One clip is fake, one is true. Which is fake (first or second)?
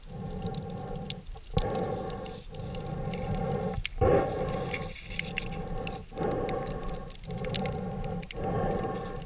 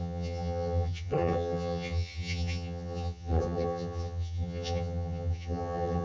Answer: second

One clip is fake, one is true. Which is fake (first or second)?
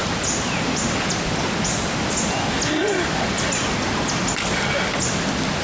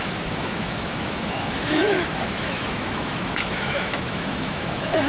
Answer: second